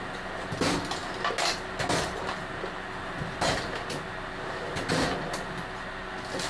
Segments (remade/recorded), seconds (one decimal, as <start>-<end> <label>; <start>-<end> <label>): 0.0-6.5 recorded